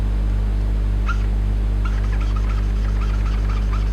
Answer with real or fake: real